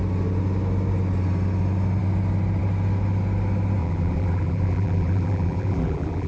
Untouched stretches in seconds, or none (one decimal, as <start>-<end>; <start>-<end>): 0.0-3.8